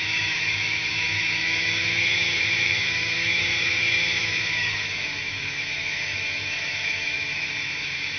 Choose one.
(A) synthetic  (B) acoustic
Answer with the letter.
A